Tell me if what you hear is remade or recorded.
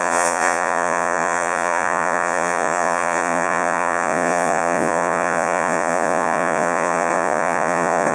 remade